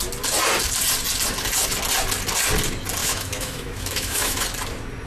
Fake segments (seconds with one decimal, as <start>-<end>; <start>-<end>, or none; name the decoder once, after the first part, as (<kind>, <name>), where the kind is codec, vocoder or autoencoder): 3.0-4.4 (autoencoder, DAC-VAE)